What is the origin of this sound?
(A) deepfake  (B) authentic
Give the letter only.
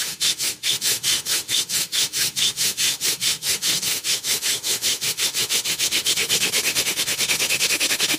A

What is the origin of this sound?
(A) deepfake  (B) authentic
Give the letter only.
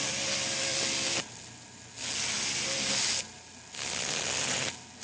B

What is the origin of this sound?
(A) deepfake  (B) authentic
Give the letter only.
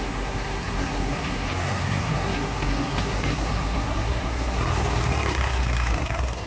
A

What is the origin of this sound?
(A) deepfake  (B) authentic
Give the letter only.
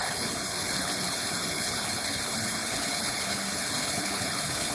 A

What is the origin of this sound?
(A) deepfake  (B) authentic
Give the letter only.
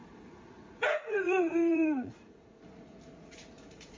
A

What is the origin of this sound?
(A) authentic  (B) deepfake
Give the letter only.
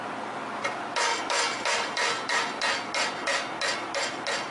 A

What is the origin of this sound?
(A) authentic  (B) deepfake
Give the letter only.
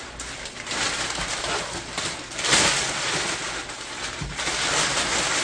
A